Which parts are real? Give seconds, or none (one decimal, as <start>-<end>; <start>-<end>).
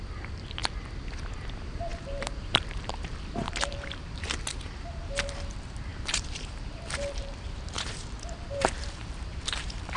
0.6-1.5